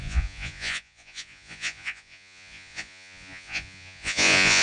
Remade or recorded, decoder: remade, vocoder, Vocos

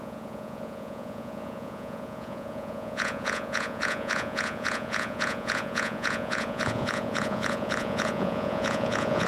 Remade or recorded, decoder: remade, vocoder, Vocos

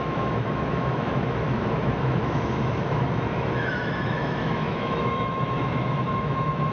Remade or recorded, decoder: remade, autoencoder, DAC-VAE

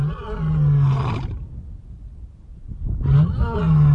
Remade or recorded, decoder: recorded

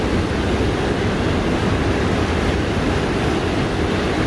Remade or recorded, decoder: recorded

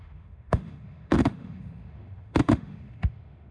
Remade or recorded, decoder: remade, autoencoder, DAC-VAE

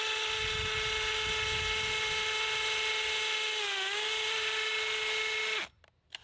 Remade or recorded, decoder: recorded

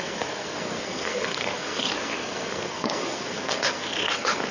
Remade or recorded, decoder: remade, codec, SNAC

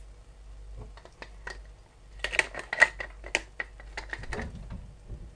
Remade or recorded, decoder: recorded